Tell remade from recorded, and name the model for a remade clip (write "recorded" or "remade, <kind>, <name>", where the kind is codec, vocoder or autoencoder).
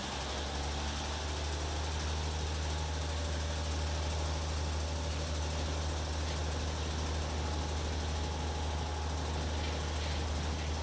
recorded